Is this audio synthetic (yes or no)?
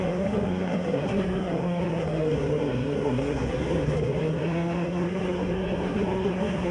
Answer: yes